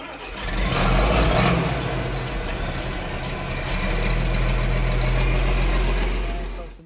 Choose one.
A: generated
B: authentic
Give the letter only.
B